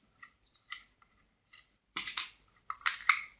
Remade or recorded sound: remade